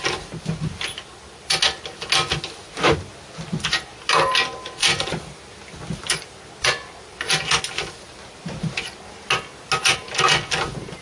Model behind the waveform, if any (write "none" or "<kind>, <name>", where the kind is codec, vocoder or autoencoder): none